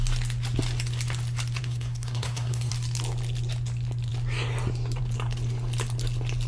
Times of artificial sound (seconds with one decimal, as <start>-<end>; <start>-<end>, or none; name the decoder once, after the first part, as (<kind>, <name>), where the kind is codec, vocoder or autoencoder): 1.6-2.7 (codec, SNAC)